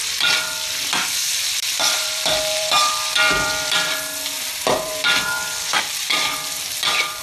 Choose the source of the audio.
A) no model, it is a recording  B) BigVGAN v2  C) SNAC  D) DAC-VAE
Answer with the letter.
B